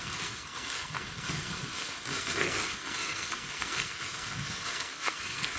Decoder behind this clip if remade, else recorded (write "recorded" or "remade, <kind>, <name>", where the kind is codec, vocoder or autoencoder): remade, codec, SNAC